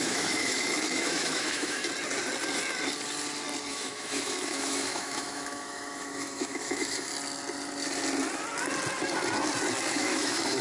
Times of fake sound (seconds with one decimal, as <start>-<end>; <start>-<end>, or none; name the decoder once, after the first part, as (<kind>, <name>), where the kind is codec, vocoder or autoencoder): 0.0-1.8 (autoencoder, DAC-VAE); 3.7-7.1; 9.9-10.6